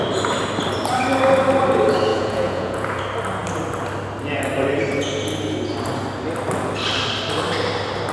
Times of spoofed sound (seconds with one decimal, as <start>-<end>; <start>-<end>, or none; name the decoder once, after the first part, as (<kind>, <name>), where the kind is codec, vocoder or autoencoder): 2.1-3.0 (vocoder, Vocos)